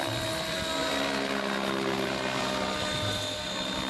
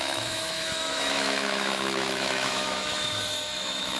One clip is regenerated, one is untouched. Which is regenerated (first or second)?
second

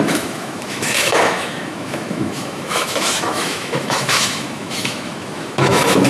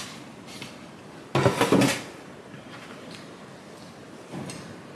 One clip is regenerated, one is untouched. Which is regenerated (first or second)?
first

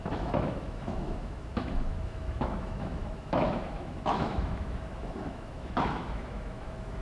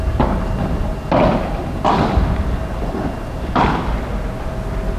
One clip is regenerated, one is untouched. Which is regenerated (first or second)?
first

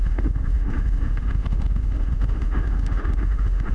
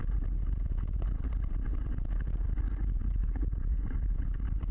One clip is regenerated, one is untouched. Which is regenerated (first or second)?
first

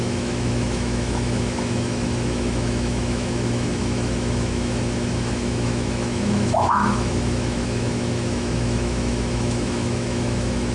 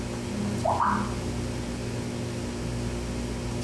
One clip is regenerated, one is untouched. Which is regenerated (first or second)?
first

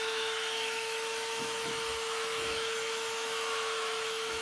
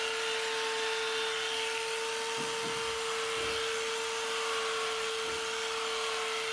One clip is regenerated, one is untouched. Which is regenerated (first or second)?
first